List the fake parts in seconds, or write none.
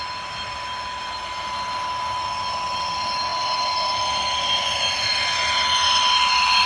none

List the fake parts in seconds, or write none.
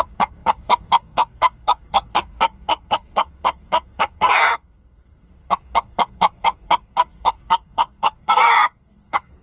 0.0-9.4 (codec, SNAC)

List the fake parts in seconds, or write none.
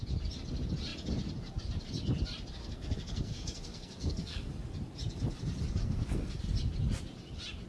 2.6-4.5 (codec, SNAC); 5.8-6.4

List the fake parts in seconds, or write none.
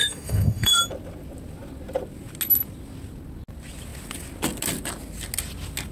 0.0-0.8 (autoencoder, DAC-VAE)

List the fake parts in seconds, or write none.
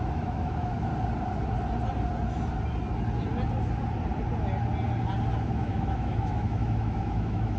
0.0-0.9 (autoencoder, DAC-VAE); 5.3-7.6